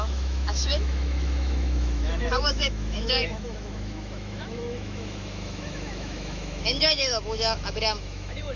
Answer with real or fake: fake